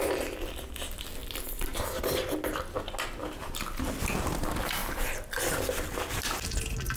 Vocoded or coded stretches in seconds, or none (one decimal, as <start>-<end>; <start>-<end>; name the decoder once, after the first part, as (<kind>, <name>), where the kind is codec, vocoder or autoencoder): 1.2-1.9 (vocoder, BigVGAN v2); 4.8-5.4